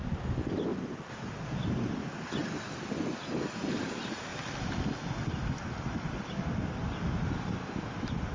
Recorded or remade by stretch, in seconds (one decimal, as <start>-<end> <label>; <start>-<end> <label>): 0.0-0.7 recorded; 0.7-1.7 remade; 1.7-2.4 recorded; 2.4-3.8 remade; 3.8-8.3 recorded